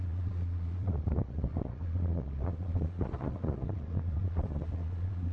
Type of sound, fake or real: fake